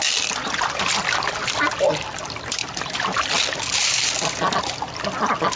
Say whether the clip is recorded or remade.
recorded